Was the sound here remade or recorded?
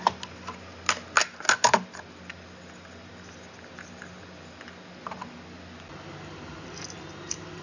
recorded